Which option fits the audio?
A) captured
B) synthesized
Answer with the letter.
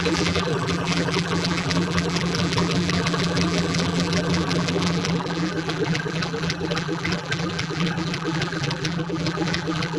B